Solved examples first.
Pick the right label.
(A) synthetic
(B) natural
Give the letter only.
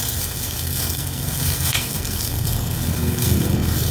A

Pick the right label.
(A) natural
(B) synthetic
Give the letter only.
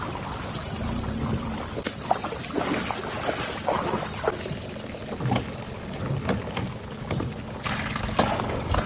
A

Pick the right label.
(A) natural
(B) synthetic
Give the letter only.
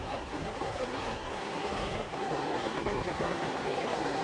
B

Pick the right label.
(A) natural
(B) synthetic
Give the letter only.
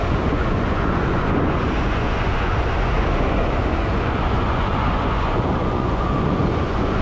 B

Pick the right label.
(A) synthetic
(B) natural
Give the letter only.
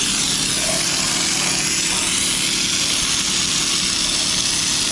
B